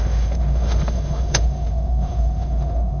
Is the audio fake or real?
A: fake